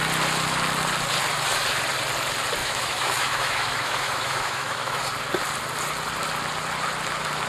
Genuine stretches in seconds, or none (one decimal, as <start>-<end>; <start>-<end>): 0.0-2.6; 5.0-7.5